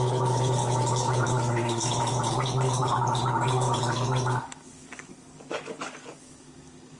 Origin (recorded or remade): remade